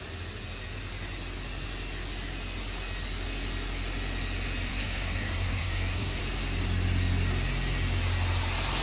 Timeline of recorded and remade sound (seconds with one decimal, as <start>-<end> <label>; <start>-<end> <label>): 0.0-4.7 recorded; 4.7-6.2 remade; 6.2-8.8 recorded